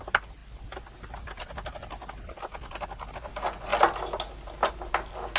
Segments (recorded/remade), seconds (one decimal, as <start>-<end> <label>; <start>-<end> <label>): 0.0-5.4 recorded